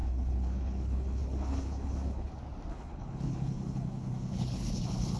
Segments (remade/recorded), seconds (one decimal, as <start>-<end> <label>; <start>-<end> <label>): 0.0-2.3 remade; 2.3-2.7 recorded; 2.7-5.2 remade